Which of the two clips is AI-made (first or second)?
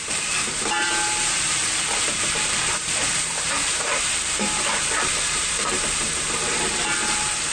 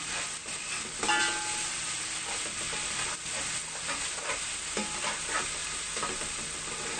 first